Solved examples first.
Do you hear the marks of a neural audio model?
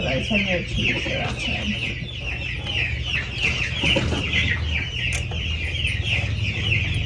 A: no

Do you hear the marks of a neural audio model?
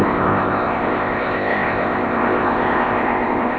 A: yes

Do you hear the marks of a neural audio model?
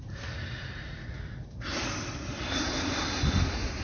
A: no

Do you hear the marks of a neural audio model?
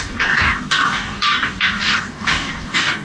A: yes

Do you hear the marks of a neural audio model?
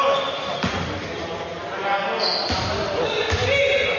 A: no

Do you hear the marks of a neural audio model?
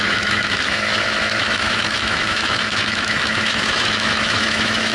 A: yes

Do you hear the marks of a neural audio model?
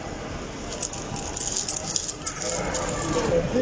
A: no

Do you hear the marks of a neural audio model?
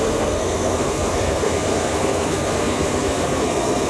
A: yes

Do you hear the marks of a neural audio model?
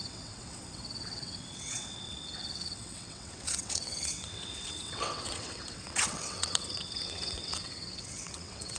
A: yes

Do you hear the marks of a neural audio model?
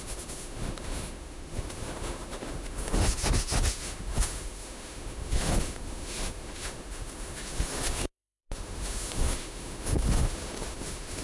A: yes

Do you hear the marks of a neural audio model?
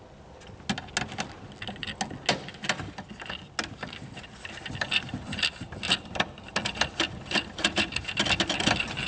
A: no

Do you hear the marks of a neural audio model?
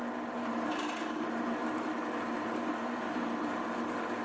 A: yes